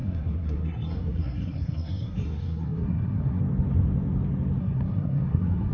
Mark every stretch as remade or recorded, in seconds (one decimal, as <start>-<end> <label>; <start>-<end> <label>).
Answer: 0.0-3.4 remade; 3.4-4.6 recorded; 4.6-5.7 remade